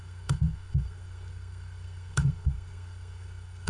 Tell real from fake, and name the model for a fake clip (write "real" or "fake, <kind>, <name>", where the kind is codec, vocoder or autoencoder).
fake, codec, SNAC